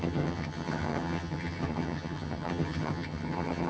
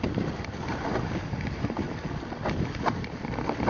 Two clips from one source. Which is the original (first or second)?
second